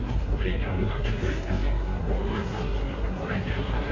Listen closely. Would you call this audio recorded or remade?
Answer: remade